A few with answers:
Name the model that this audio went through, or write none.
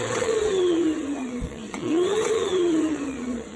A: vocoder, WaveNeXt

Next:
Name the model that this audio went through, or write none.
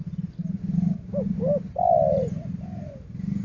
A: none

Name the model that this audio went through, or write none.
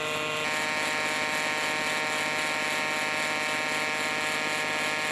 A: none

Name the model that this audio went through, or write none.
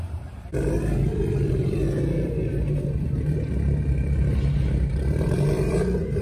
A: vocoder, BigVGAN v2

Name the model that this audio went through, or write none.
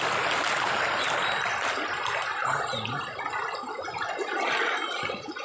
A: none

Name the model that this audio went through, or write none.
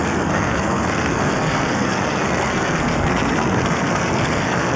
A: codec, SNAC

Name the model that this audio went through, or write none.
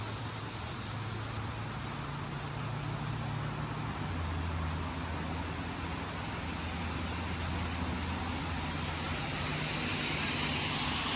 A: none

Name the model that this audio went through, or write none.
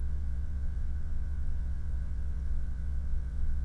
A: vocoder, WaveNeXt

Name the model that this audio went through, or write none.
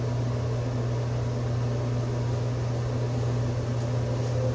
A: none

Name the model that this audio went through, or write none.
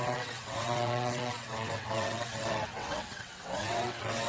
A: vocoder, WaveNeXt